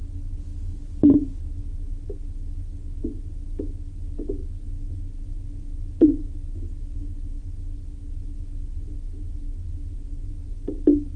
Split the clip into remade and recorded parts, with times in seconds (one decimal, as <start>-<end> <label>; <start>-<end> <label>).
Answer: 0.0-11.2 recorded